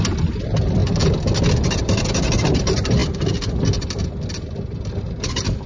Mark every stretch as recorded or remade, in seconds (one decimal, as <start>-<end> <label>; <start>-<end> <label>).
0.0-5.7 recorded